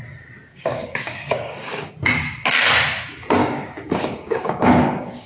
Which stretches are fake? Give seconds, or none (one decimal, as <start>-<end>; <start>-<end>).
0.5-1.9; 3.4-5.3